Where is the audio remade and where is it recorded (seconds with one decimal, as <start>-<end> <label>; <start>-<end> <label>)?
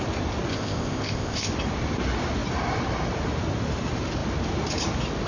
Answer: 0.0-0.5 recorded; 0.5-1.5 remade; 1.5-5.3 recorded